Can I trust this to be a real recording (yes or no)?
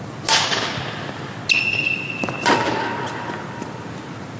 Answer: yes